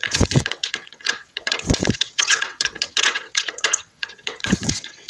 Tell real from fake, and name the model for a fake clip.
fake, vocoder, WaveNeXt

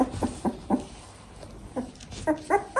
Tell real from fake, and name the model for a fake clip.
real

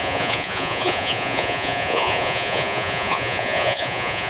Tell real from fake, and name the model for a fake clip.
fake, vocoder, Vocos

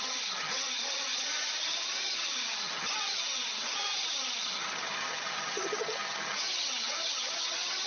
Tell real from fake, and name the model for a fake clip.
fake, vocoder, HiFi-GAN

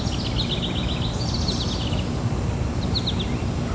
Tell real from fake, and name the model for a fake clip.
real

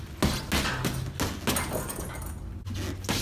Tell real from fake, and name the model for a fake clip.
real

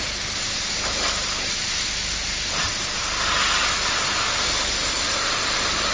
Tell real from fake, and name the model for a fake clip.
real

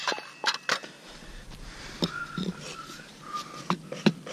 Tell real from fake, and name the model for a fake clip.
real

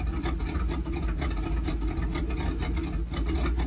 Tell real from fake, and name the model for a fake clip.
real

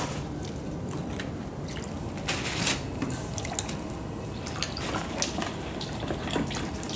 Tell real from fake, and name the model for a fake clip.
real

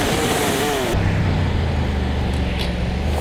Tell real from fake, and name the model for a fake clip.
real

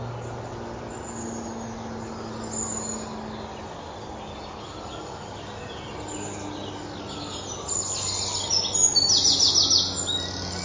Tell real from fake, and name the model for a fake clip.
real